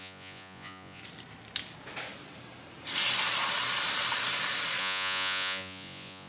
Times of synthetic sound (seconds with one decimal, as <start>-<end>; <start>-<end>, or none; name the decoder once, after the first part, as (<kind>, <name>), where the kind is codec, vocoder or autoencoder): 0.0-1.0 (vocoder, Vocos); 4.8-6.3